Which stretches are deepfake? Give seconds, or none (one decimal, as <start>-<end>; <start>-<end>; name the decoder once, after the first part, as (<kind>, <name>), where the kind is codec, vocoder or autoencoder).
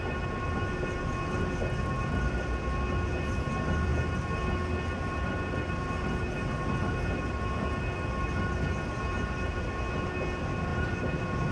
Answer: none